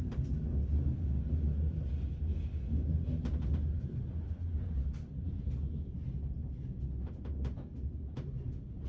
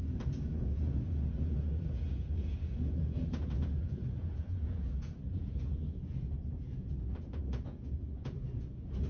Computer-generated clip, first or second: second